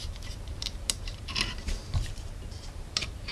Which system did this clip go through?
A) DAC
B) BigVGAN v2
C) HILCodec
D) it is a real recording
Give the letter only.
B